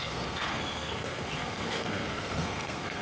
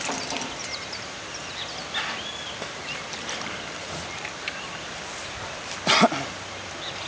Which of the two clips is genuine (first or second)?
second